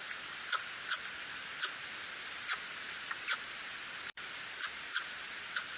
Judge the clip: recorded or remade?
recorded